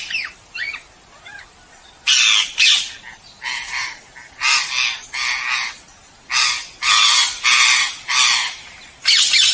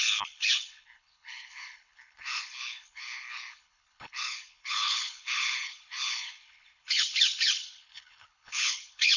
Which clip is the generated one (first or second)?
second